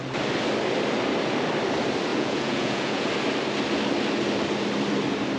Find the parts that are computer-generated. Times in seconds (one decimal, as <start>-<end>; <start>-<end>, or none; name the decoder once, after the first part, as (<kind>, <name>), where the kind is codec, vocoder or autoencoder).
2.1-3.1 (vocoder, Vocos)